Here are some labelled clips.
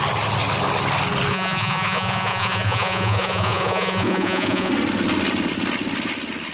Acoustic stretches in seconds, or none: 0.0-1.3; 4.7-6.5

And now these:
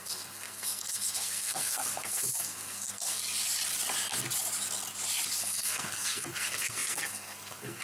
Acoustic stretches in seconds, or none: 3.2-5.4

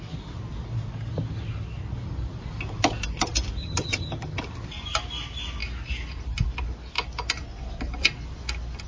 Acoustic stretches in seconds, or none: 0.0-3.6; 4.4-8.9

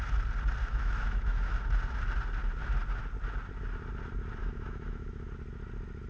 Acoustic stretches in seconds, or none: 0.0-0.6; 1.5-4.4; 5.3-6.1

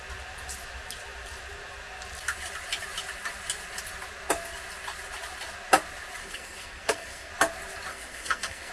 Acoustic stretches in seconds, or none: 0.0-6.2; 7.3-7.9

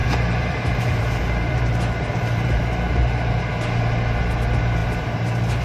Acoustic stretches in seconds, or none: 3.4-5.6

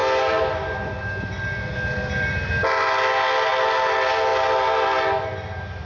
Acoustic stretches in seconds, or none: 0.0-5.8

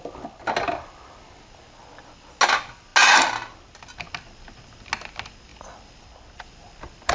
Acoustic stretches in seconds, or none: 0.0-7.1